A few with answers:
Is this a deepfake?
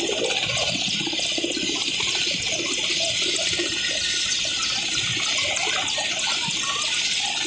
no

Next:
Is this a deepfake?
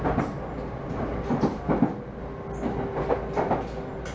no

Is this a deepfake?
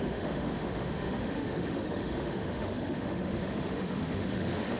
yes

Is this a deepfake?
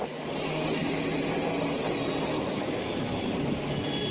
no